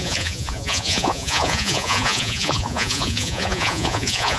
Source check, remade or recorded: remade